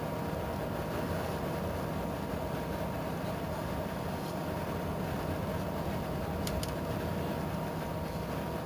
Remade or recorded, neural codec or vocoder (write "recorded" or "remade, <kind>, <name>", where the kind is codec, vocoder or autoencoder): recorded